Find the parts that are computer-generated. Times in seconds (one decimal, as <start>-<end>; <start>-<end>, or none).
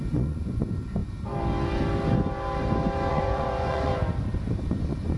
0.0-1.0; 3.1-3.9; 4.7-5.2